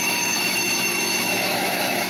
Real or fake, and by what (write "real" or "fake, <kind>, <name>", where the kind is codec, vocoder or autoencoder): fake, autoencoder, DAC-VAE